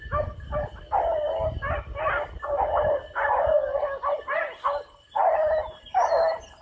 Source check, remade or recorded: recorded